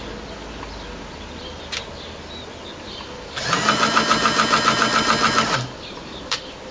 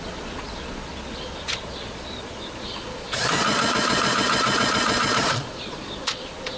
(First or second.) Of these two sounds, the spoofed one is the second